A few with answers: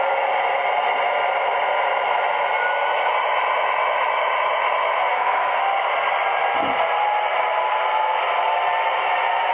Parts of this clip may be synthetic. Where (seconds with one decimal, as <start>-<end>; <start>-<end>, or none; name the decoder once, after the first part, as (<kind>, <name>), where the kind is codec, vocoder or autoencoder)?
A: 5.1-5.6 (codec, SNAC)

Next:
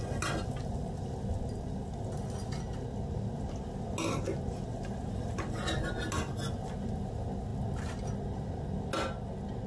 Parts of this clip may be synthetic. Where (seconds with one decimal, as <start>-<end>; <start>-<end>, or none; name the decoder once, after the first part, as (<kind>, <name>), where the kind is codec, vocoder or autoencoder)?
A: none

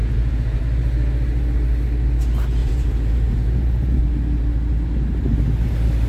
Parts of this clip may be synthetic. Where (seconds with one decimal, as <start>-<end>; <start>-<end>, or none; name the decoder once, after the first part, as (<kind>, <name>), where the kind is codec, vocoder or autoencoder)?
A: 0.0-0.6 (vocoder, Vocos); 2.6-4.0

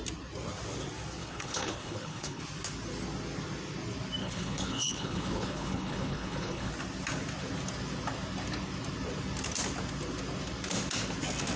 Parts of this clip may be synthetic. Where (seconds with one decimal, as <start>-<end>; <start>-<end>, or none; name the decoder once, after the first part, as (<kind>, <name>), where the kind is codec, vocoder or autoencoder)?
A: 1.2-2.4 (codec, HILCodec); 4.2-6.7

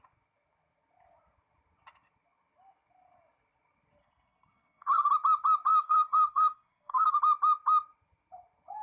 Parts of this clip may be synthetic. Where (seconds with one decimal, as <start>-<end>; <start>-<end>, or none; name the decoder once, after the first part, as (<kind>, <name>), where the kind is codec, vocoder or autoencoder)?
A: 4.0-5.1 (codec, SNAC); 5.7-7.2